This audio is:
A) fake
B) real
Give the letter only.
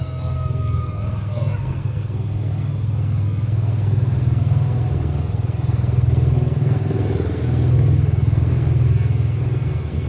A